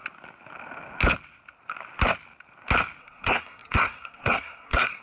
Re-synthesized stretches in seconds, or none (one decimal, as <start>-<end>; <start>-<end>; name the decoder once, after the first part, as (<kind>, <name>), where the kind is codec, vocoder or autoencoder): 3.0-5.0 (codec, SNAC)